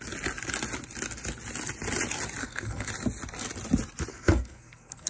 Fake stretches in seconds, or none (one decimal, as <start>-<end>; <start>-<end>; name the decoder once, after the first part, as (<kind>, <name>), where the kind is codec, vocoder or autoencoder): 2.4-2.9 (codec, SNAC); 4.1-5.1